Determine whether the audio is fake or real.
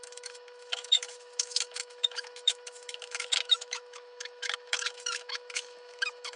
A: fake